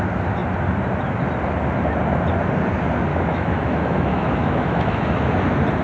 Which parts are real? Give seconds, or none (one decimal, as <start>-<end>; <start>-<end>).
0.0-3.1; 5.3-5.8